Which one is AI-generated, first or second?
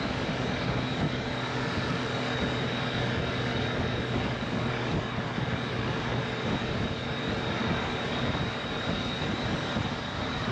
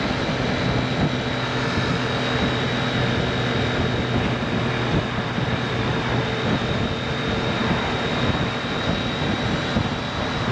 first